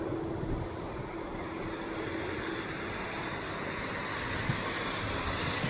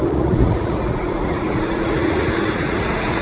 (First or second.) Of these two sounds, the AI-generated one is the second